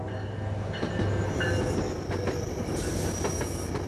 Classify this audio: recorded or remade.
recorded